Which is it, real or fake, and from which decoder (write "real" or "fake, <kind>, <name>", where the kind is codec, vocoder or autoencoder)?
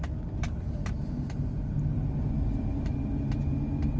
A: real